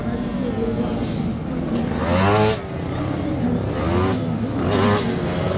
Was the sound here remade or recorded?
recorded